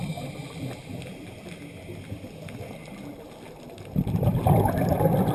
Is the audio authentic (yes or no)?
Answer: yes